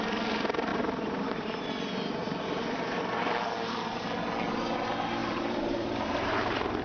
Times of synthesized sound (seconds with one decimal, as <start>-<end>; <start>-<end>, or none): 0.7-1.7; 5.2-6.8